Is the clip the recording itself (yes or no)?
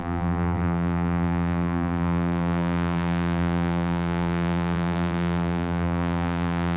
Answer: no